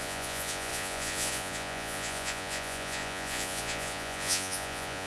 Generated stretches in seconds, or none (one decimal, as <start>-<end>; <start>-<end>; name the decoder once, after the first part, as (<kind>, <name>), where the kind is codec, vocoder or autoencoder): 0.0-5.1 (vocoder, Vocos)